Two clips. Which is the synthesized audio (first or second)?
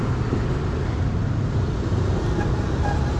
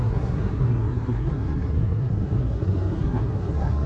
second